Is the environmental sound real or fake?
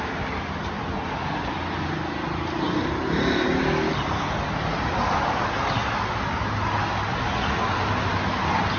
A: real